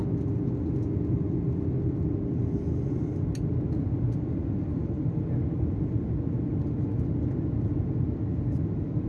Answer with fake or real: real